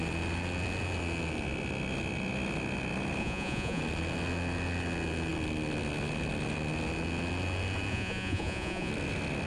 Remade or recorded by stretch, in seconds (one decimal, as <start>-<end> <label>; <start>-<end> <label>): 0.0-3.2 recorded; 3.2-3.8 remade; 3.8-7.9 recorded; 7.9-8.9 remade; 8.9-9.5 recorded